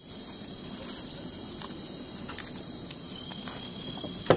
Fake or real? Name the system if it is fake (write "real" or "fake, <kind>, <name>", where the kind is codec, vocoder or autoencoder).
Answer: real